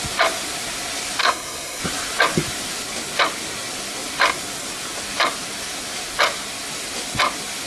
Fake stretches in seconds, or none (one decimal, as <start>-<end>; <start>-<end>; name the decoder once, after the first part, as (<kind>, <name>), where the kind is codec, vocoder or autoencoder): 1.2-1.8 (codec, SNAC)